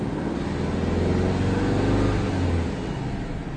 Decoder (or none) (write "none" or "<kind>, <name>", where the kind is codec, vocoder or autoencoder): none